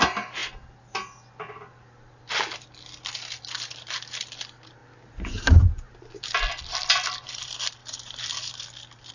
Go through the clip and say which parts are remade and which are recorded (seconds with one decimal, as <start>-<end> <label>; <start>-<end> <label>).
0.0-9.1 recorded